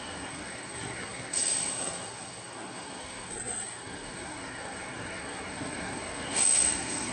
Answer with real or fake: fake